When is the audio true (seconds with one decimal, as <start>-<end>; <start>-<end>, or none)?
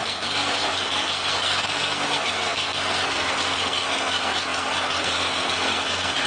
none